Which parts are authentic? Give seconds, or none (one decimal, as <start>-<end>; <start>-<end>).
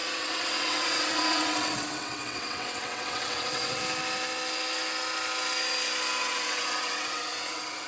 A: 3.8-6.2